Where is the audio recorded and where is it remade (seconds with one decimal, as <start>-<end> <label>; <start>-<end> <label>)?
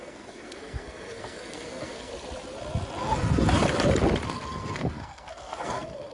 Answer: 0.0-2.1 remade; 2.1-4.3 recorded; 4.3-6.1 remade